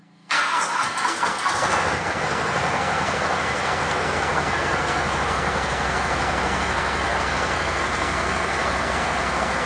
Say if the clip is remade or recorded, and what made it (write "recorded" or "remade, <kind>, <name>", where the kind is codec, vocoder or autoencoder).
remade, codec, SNAC